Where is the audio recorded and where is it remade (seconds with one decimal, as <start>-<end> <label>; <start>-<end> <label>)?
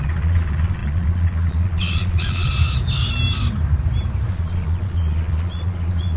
0.0-2.5 remade; 2.5-4.3 recorded; 4.3-6.2 remade